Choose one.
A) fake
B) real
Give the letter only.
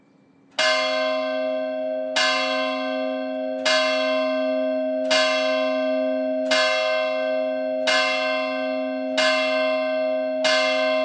B